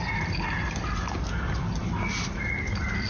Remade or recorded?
recorded